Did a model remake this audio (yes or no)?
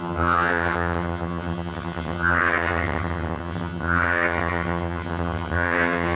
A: yes